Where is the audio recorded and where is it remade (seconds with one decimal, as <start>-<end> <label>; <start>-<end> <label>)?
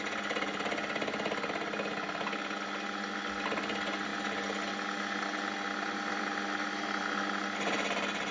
0.0-8.3 recorded